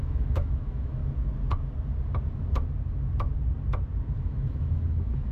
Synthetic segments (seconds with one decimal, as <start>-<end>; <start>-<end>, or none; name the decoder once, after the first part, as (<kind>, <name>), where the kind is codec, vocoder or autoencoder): 0.0-1.0 (autoencoder, DAC-VAE); 4.2-5.3